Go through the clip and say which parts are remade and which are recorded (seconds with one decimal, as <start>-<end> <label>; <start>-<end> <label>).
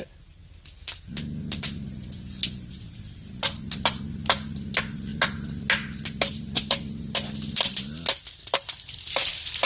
0.0-9.7 recorded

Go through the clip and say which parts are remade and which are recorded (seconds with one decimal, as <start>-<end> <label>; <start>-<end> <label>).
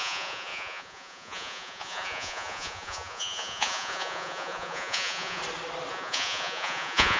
0.0-5.4 remade; 5.4-5.9 recorded; 5.9-7.2 remade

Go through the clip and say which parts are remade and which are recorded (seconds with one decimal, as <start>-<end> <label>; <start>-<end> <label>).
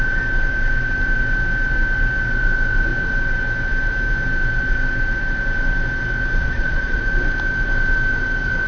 0.0-6.4 recorded; 6.4-7.0 remade; 7.0-8.7 recorded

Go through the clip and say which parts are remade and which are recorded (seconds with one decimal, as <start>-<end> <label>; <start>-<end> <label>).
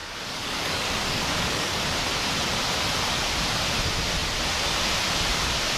0.0-1.8 remade; 1.8-5.8 recorded